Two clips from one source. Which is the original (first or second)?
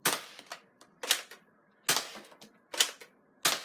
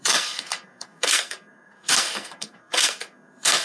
first